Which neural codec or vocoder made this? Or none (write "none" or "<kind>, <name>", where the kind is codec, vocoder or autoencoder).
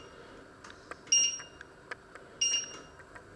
none